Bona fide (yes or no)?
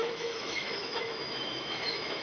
no